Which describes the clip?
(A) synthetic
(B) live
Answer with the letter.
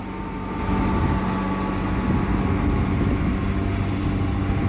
B